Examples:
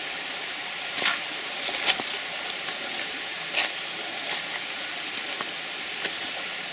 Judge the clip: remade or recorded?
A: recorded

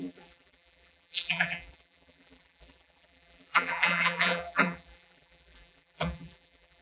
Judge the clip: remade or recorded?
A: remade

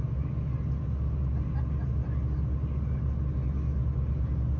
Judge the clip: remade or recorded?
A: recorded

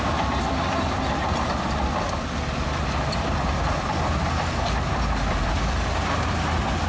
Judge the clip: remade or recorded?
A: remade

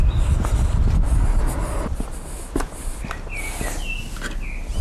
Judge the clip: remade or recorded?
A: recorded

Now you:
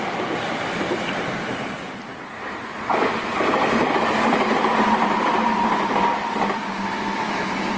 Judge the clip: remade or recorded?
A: remade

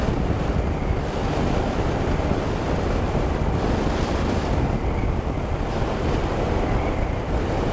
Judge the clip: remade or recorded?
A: recorded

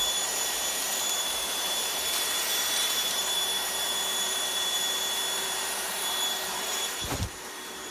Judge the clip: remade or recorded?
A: remade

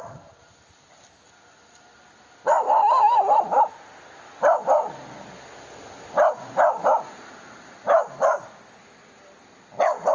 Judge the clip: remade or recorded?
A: recorded